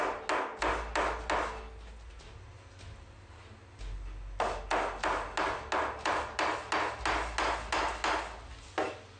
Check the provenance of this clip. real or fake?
real